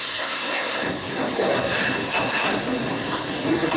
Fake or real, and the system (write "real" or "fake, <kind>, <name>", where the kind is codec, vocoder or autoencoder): fake, codec, SNAC